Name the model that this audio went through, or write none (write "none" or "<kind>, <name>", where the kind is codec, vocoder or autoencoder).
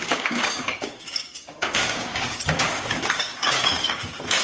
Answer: codec, DAC